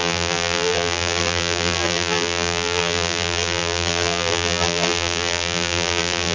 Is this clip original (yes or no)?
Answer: no